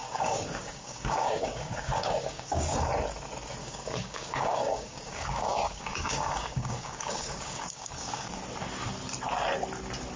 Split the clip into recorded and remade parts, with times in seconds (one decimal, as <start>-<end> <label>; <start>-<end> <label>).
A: 0.0-2.9 remade; 2.9-3.6 recorded; 3.6-8.4 remade; 8.4-10.2 recorded